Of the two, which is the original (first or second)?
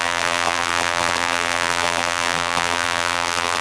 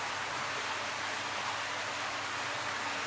second